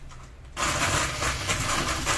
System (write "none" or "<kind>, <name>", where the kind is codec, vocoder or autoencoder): none